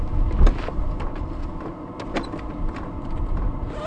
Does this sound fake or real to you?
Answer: real